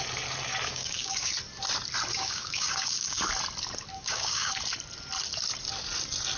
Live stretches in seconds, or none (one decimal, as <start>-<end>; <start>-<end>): 0.0-0.7; 1.3-2.1; 3.2-3.9; 4.5-6.4